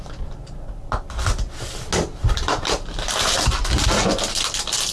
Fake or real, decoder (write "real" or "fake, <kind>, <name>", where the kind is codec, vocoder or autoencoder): real